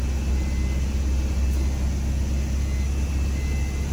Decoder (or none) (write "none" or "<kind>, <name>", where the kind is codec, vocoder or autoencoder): none